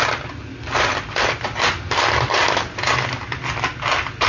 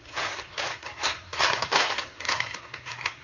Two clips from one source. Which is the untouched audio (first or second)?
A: first